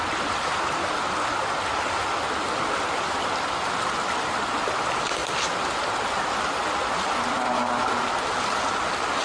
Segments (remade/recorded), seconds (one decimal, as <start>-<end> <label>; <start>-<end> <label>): 0.0-9.2 recorded